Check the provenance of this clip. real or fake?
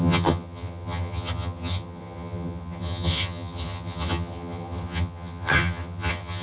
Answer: fake